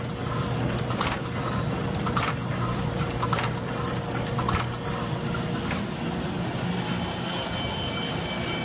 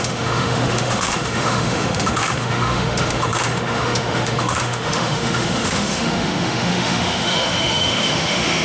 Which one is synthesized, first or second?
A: second